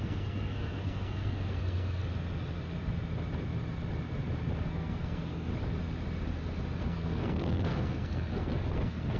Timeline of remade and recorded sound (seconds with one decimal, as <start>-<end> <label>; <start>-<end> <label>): 0.0-2.0 remade; 2.0-4.6 recorded; 4.6-5.5 remade; 5.5-6.8 recorded; 6.8-9.2 remade